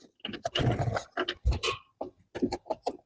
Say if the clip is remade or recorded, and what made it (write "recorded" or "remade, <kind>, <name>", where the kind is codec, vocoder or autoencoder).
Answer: recorded